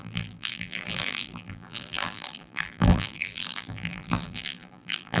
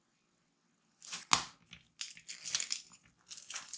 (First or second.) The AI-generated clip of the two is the first